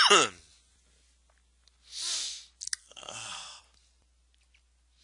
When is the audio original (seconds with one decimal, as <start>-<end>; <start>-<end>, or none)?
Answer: 0.0-2.8; 3.6-5.0